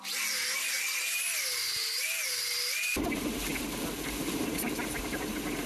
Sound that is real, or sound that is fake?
real